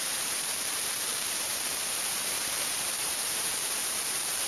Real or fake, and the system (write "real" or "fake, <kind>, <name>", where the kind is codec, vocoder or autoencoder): fake, vocoder, BigVGAN v2